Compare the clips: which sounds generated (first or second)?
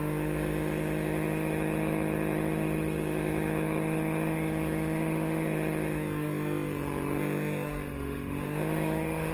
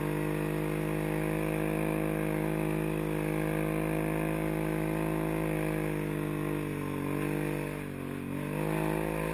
first